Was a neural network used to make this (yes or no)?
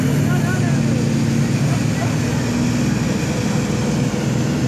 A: no